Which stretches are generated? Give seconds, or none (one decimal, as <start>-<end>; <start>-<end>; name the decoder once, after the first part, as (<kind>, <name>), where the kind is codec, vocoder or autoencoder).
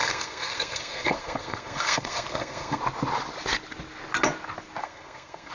0.0-2.8 (codec, SNAC); 4.8-5.5